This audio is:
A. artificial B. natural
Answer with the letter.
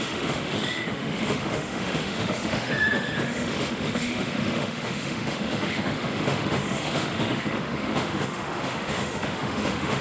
A